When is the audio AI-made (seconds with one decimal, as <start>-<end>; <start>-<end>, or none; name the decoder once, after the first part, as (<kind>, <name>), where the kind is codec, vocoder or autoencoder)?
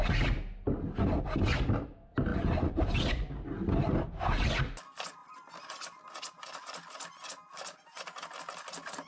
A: none